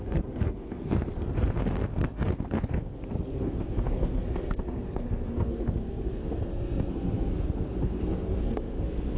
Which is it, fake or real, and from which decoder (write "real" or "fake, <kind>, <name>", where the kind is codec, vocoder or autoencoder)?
fake, codec, SNAC